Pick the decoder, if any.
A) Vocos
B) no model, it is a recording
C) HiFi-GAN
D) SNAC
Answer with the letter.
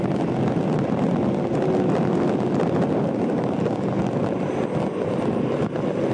B